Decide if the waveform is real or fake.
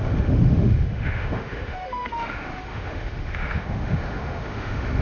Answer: fake